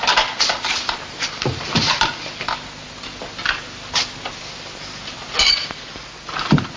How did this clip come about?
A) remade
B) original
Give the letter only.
B